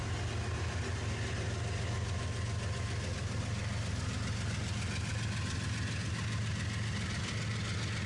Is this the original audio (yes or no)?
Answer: yes